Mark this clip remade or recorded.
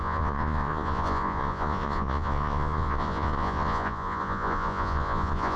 remade